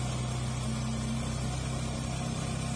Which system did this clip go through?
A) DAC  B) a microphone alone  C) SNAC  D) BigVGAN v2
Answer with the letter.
B